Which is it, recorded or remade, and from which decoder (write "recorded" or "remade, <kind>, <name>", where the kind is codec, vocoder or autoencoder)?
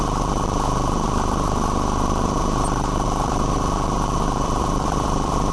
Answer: remade, vocoder, BigVGAN v2